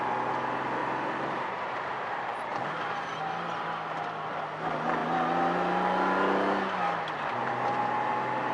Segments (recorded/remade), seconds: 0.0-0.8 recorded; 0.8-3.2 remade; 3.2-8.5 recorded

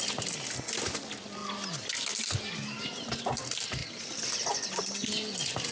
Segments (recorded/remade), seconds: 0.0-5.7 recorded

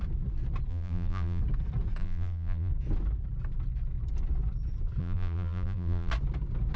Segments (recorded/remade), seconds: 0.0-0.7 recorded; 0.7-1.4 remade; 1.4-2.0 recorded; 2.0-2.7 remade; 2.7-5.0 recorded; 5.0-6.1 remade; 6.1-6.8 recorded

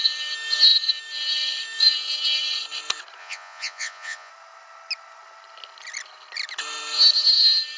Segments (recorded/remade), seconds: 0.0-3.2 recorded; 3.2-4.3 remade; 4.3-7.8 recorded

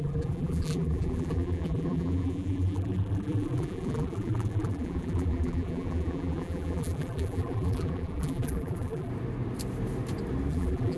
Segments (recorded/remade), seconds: 0.0-9.1 remade; 9.1-10.5 recorded; 10.5-11.0 remade